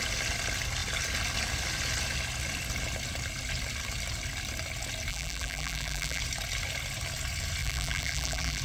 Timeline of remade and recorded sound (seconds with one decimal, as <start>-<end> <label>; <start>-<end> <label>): 0.0-5.1 recorded; 5.1-6.2 remade; 6.2-7.6 recorded; 7.6-8.6 remade